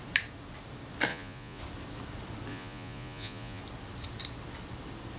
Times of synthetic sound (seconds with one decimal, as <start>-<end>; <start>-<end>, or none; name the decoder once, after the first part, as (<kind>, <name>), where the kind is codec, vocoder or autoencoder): 1.1-1.6 (vocoder, Vocos); 2.5-3.6